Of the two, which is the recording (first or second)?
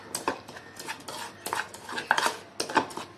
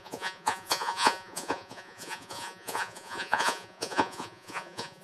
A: first